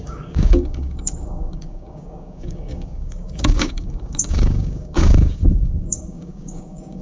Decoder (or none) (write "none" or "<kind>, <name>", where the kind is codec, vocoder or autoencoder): codec, DAC